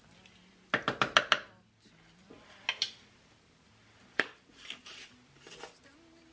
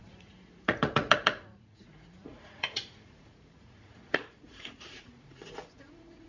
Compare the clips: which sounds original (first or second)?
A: first